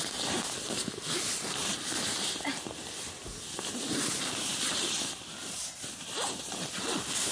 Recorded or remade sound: recorded